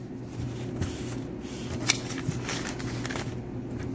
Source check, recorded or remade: recorded